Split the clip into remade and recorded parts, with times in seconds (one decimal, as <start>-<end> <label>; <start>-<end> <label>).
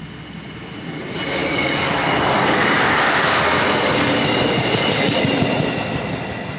0.0-1.4 recorded; 1.4-5.2 remade; 5.2-6.6 recorded